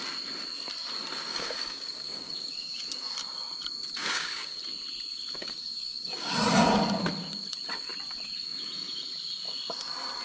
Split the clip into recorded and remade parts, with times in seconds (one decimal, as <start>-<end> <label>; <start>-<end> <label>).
0.0-1.3 recorded; 1.3-2.7 remade; 2.7-4.0 recorded; 4.0-4.6 remade; 4.6-5.4 recorded; 5.4-6.3 remade; 6.3-10.2 recorded